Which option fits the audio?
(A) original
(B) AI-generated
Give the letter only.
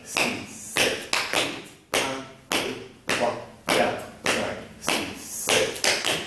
A